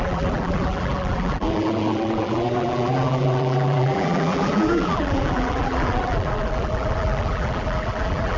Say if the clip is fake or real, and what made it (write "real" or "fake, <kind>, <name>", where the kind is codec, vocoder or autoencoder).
fake, vocoder, BigVGAN v2